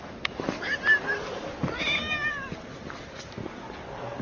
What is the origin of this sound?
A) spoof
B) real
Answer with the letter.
B